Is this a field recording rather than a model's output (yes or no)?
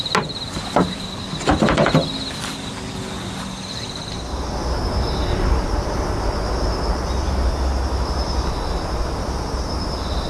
yes